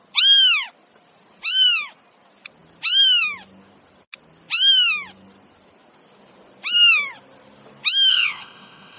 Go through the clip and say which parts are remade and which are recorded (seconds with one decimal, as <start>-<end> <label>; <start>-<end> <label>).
0.0-8.1 recorded; 8.1-9.0 remade